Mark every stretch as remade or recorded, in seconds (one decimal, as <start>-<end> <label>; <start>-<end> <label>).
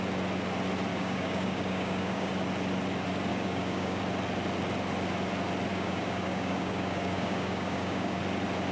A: 0.0-0.9 recorded; 0.9-2.3 remade; 2.3-3.3 recorded; 3.3-4.0 remade; 4.0-5.7 recorded; 5.7-8.2 remade; 8.2-8.7 recorded